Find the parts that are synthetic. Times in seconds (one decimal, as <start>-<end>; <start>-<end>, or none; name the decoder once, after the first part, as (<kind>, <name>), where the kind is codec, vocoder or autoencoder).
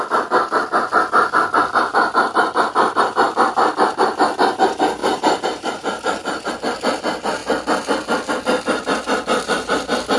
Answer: 5.0-6.5 (vocoder, BigVGAN v2)